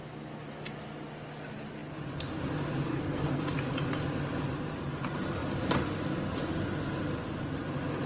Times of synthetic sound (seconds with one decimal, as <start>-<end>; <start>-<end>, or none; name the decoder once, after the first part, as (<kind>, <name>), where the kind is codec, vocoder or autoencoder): 2.9-3.4 (codec, SNAC)